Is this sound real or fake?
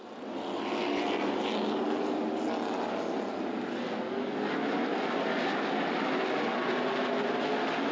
real